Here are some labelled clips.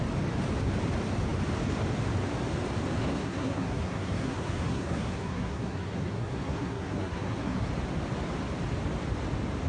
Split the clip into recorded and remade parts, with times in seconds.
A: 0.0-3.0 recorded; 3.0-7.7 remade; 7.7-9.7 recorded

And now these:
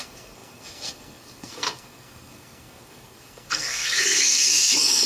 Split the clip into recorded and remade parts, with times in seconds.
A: 0.0-5.1 remade

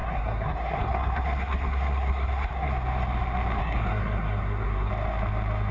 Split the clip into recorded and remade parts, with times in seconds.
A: 0.0-2.7 remade; 2.7-3.6 recorded; 3.6-4.9 remade; 4.9-5.7 recorded

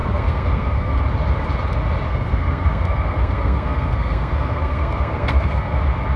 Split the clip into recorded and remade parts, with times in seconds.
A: 0.0-1.0 remade; 1.0-2.1 recorded; 2.1-5.8 remade; 5.8-6.2 recorded

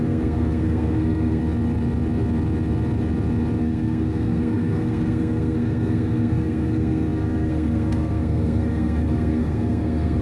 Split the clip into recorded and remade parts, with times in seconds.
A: 0.0-1.4 remade; 1.4-3.6 recorded; 3.6-10.2 remade

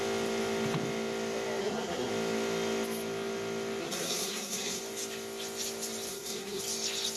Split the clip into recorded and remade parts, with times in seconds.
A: 0.0-1.6 recorded; 1.6-2.1 remade; 2.1-3.8 recorded; 3.8-4.8 remade; 4.8-6.1 recorded; 6.1-6.6 remade; 6.6-7.2 recorded

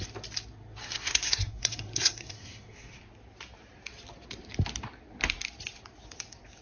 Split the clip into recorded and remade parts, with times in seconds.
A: 0.0-0.8 recorded; 0.8-3.0 remade; 3.0-6.6 recorded

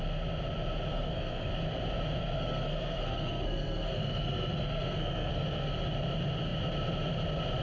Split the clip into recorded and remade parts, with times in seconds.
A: 0.0-0.9 recorded; 0.9-1.5 remade; 1.5-2.2 recorded; 2.2-5.7 remade; 5.7-7.6 recorded